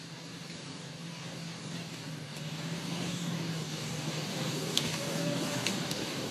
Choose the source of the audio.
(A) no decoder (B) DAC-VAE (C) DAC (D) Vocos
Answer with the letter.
C